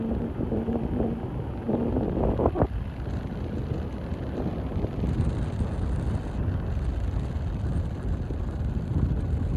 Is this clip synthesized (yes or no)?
no